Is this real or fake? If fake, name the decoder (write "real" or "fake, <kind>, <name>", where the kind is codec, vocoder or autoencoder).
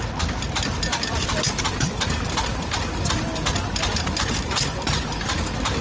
real